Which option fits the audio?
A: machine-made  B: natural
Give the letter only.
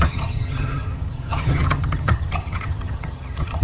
A